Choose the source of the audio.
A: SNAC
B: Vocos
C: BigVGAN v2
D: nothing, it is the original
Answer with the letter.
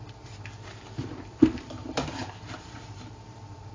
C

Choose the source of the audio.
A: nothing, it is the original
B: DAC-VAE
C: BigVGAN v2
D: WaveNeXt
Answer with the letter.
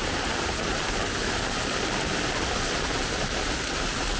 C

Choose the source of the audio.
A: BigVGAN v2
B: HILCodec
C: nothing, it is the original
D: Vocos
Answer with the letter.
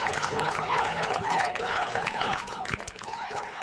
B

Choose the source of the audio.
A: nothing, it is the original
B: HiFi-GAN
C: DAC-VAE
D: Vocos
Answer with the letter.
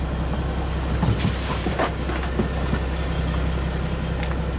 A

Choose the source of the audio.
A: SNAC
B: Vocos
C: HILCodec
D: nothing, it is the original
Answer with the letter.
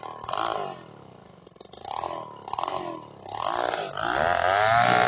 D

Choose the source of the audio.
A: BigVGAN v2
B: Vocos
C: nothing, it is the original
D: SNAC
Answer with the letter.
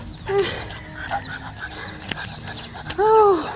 C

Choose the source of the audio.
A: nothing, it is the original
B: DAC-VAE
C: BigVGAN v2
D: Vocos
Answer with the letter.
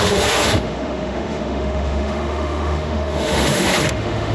B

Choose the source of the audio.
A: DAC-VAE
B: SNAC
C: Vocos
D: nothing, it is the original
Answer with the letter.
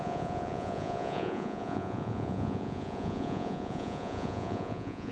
C